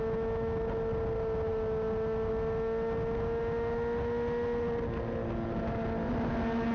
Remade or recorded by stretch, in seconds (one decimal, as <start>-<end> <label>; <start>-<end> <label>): 0.0-6.7 recorded